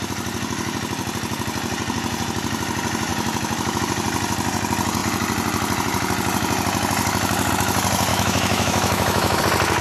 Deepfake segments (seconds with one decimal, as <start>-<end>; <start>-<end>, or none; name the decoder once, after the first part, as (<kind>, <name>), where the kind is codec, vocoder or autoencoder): 8.1-9.4 (autoencoder, DAC-VAE)

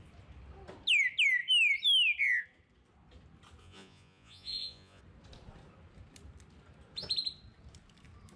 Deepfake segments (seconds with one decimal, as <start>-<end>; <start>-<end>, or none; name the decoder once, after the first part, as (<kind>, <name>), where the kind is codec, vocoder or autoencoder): 3.6-5.0 (vocoder, Vocos)

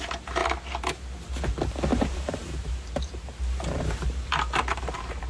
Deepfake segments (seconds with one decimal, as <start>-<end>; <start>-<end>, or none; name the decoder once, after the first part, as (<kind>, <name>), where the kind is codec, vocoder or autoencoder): 1.9-5.3 (vocoder, BigVGAN v2)

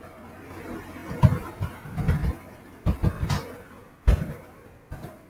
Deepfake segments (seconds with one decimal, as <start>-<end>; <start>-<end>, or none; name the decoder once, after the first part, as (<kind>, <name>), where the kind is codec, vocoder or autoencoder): none